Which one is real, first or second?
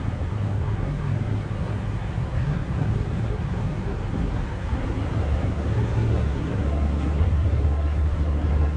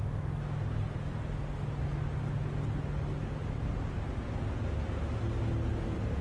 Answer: second